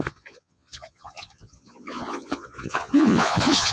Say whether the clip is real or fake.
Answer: fake